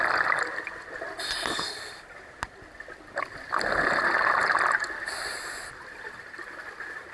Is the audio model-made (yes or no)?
no